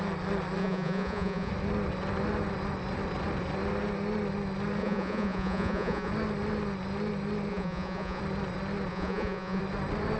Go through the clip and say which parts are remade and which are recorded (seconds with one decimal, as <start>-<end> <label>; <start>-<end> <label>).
0.0-0.6 recorded; 0.6-1.5 remade; 1.5-4.8 recorded; 4.8-6.1 remade; 6.1-7.5 recorded; 7.5-8.2 remade; 8.2-8.9 recorded; 8.9-9.6 remade; 9.6-10.2 recorded

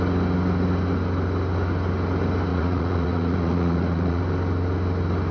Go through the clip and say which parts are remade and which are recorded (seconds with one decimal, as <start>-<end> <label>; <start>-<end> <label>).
0.0-2.5 recorded; 2.5-4.2 remade; 4.2-5.3 recorded